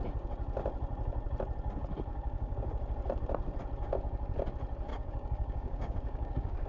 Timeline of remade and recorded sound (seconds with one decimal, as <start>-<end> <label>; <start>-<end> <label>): 0.0-2.1 recorded; 2.1-2.7 remade; 2.7-4.9 recorded; 4.9-6.7 remade